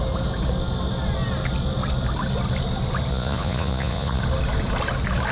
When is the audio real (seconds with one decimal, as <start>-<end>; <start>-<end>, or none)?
0.0-3.1; 4.2-5.3